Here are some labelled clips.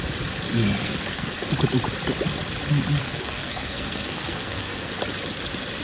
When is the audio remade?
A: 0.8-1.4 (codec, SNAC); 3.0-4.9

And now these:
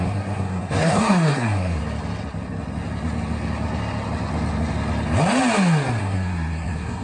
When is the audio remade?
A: 0.0-1.8 (codec, SNAC); 6.0-7.0

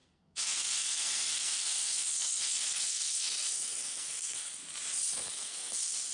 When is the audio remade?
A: 0.0-4.6 (codec, SNAC); 5.3-6.1

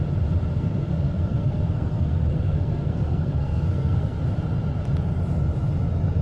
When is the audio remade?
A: 0.5-4.2 (codec, SNAC)

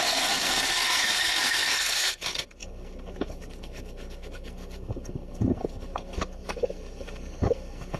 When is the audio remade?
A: 0.0-8.0 (codec, SNAC)

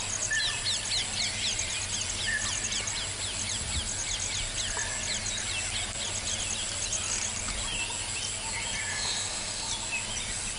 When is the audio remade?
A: 8.9-9.7 (codec, SNAC)

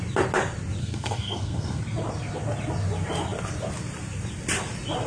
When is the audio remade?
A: 0.8-1.8 (codec, SNAC)